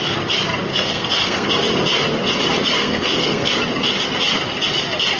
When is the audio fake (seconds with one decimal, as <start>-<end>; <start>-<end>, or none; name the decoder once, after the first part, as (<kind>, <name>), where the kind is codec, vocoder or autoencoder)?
0.7-1.5 (codec, SNAC); 2.8-3.5